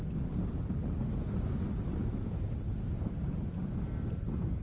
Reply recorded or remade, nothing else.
recorded